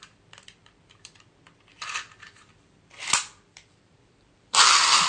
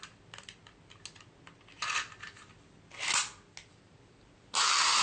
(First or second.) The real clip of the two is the second